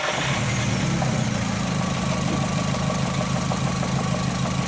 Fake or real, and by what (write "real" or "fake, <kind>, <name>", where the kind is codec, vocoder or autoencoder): real